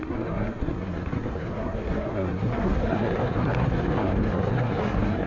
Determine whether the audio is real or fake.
fake